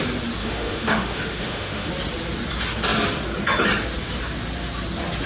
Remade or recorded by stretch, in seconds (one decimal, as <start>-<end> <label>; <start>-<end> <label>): 0.0-0.4 recorded; 0.4-1.9 remade; 1.9-5.3 recorded